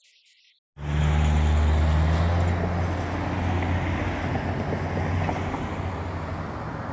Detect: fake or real real